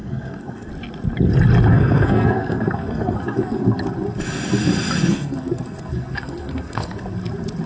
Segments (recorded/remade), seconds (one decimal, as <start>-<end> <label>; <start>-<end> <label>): 0.0-0.7 remade; 0.7-1.7 recorded; 1.7-3.6 remade; 3.6-5.1 recorded; 5.1-7.0 remade; 7.0-7.7 recorded